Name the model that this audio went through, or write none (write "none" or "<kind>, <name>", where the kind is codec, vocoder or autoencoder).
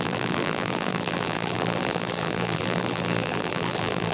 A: vocoder, BigVGAN v2